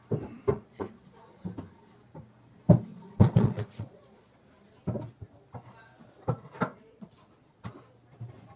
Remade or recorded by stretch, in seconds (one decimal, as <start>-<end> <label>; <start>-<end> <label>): 0.0-0.5 recorded; 0.5-1.1 remade; 1.1-2.9 recorded; 2.9-4.4 remade; 4.4-6.7 recorded; 6.7-7.3 remade; 7.3-8.6 recorded